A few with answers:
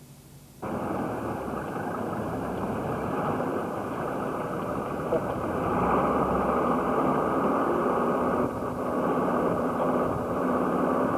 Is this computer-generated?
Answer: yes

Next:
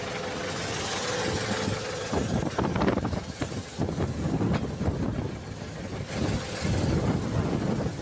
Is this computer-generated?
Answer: no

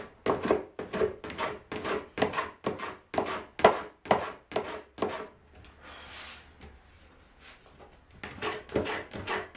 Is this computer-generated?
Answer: no